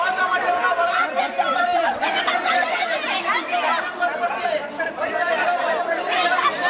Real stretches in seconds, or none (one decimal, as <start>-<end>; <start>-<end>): 0.0-6.7